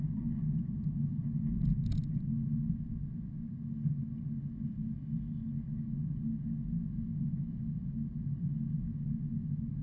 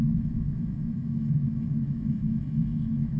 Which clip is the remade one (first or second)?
second